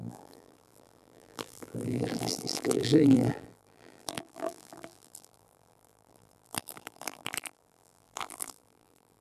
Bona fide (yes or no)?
no